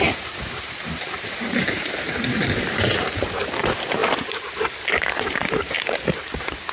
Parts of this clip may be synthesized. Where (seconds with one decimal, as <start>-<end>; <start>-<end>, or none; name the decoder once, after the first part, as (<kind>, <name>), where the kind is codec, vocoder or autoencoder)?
0.0-6.7 (vocoder, BigVGAN v2)

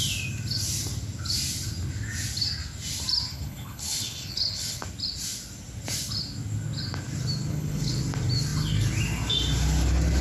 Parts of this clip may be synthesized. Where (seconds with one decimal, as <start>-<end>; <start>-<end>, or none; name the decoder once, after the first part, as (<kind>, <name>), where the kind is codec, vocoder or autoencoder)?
3.3-4.8 (codec, HILCodec); 7.5-8.0

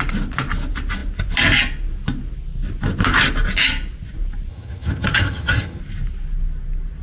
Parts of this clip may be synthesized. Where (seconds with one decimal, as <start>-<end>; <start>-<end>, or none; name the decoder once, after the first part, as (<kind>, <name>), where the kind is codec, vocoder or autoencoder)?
4.5-5.8 (vocoder, HiFi-GAN)

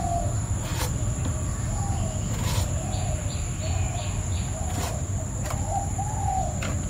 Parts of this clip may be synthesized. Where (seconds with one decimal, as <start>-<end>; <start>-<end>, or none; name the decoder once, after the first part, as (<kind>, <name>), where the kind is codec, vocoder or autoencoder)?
none

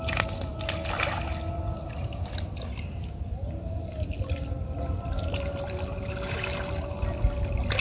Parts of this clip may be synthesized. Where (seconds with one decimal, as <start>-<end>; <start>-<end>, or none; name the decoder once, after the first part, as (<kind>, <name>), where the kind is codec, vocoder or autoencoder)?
none

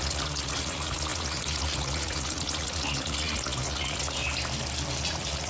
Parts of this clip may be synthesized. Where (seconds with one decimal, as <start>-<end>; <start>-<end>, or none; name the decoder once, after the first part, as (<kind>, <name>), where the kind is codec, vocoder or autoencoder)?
0.0-4.2 (vocoder, Vocos); 5.0-5.5

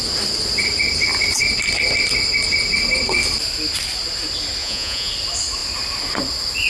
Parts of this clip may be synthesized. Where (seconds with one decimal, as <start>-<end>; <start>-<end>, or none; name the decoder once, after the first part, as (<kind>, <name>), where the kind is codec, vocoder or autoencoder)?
4.6-5.1 (vocoder, Vocos)

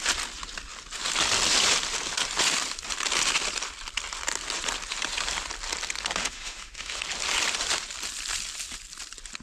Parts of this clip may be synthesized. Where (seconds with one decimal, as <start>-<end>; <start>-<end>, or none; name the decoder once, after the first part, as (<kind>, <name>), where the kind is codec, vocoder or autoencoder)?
6.2-7.0 (autoencoder, DAC-VAE)